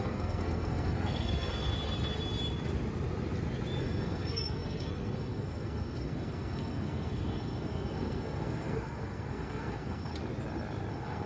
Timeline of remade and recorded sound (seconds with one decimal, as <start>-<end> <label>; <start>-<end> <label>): 0.0-1.7 remade; 1.7-3.8 recorded; 3.8-10.1 remade; 10.1-10.9 recorded; 10.9-11.3 remade